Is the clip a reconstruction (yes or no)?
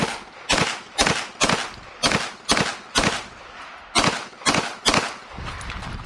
no